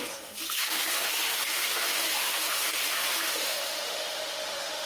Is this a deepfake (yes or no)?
yes